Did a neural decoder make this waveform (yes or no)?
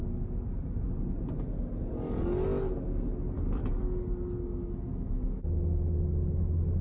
no